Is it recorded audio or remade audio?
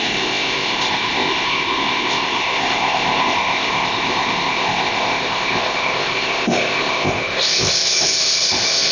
remade